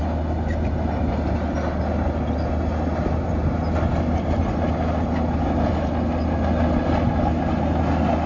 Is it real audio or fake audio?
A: real